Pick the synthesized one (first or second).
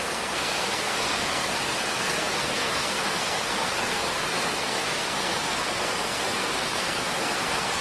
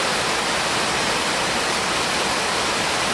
first